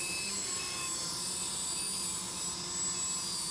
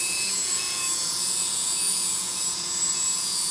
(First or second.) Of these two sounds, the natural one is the first